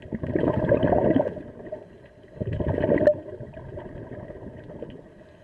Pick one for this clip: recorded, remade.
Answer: recorded